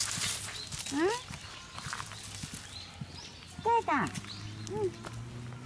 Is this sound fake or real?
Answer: real